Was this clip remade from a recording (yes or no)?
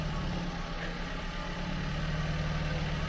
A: no